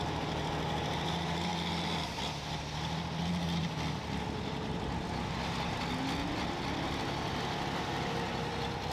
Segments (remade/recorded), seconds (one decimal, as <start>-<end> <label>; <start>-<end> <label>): 0.0-1.5 recorded; 1.5-2.6 remade; 2.6-3.6 recorded; 3.6-4.9 remade; 4.9-6.2 recorded; 6.2-8.1 remade; 8.1-8.9 recorded